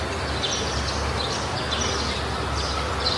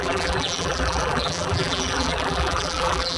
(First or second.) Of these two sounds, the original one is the first